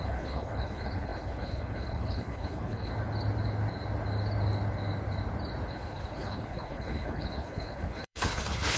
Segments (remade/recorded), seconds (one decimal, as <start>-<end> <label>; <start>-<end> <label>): 0.0-2.9 remade; 2.9-5.7 recorded; 5.7-8.8 remade